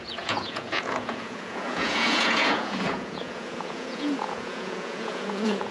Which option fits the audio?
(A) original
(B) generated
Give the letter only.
B